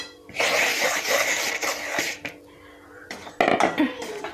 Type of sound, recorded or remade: recorded